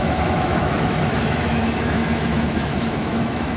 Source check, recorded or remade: remade